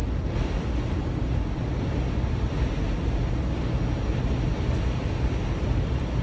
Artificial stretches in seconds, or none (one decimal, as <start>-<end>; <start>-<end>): none